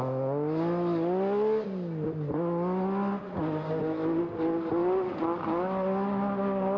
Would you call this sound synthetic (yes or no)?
no